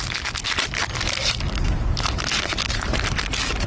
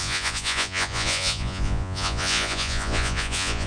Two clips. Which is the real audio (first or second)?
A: first